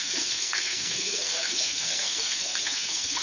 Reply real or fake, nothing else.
fake